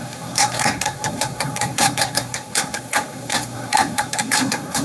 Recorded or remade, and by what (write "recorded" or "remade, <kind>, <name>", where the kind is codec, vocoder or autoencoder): remade, codec, SNAC